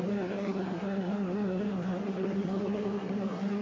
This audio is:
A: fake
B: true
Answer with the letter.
A